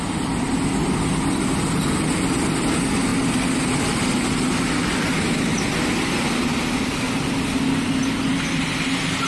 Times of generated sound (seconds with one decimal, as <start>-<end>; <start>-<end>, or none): none